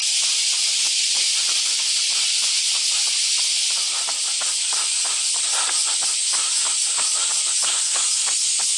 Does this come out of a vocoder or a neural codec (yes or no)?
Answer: no